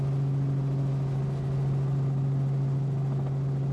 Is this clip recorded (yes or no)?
yes